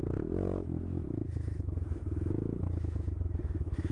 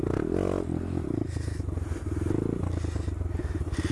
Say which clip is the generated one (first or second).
first